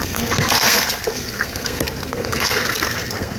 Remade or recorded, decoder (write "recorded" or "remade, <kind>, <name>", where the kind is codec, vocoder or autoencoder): remade, codec, SNAC